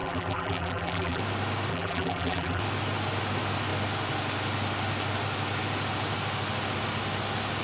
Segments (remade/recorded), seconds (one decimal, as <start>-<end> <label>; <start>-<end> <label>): 0.0-1.2 remade; 1.2-1.7 recorded; 1.7-2.6 remade; 2.6-7.6 recorded